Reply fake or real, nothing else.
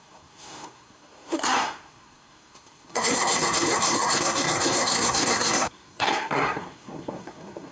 fake